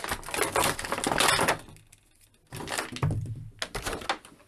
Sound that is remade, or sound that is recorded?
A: recorded